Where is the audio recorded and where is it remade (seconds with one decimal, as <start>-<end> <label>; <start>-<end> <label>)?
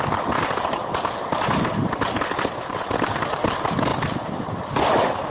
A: 0.0-3.9 recorded; 3.9-4.5 remade; 4.5-5.3 recorded